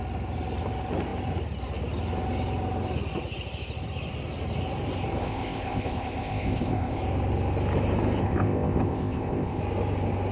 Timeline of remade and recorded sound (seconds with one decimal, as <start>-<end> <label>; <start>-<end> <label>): 0.0-5.2 recorded; 5.2-7.0 remade; 7.0-8.2 recorded; 8.2-9.6 remade; 9.6-10.3 recorded